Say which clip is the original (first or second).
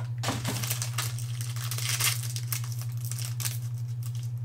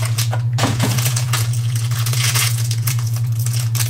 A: first